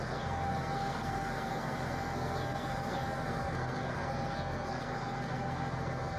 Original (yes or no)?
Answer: no